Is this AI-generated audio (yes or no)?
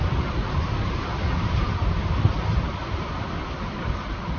yes